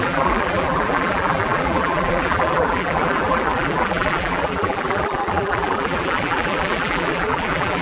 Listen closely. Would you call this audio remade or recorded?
remade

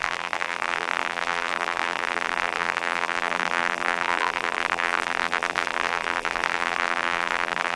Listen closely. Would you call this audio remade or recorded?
remade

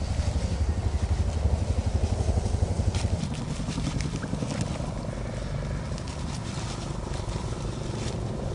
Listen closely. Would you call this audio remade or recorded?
recorded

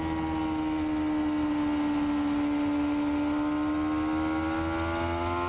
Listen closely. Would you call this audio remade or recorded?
recorded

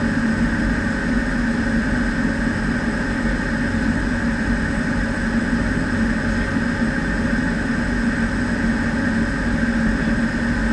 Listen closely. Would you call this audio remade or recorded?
recorded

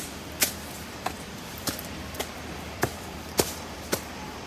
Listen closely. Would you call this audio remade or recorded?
remade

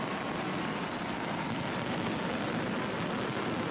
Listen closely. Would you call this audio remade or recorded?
recorded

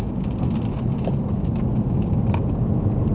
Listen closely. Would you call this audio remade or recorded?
recorded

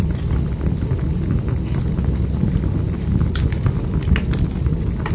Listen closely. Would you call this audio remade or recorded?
recorded